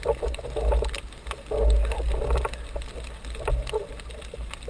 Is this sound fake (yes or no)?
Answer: no